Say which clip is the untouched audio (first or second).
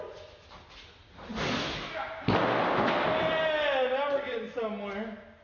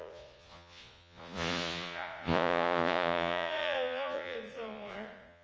first